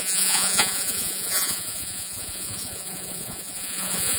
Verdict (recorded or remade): remade